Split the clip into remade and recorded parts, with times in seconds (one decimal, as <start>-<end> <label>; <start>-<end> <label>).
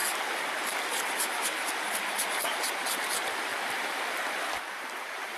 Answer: 0.0-3.5 recorded; 3.5-5.4 remade